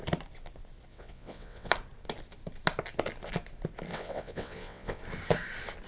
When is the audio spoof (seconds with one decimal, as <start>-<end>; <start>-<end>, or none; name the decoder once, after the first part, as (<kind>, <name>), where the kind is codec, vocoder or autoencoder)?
0.9-1.7 (vocoder, WaveNeXt); 3.9-5.0

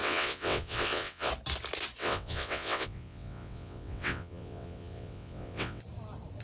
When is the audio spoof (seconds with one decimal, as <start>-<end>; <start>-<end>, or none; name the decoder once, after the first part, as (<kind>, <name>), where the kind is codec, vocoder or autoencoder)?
0.0-1.3 (vocoder, WaveNeXt); 2.0-5.8

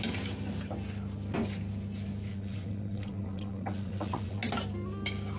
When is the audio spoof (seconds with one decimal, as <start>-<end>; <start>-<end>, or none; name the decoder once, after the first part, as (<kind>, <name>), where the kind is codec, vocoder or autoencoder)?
2.3-4.4 (vocoder, WaveNeXt)

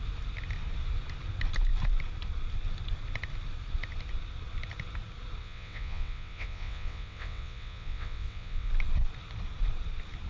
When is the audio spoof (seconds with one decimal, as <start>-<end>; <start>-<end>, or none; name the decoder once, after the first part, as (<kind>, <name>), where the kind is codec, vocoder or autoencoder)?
5.4-8.7 (vocoder, WaveNeXt)